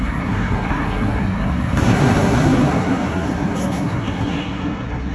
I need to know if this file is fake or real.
fake